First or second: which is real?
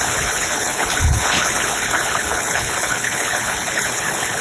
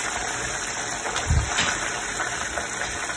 second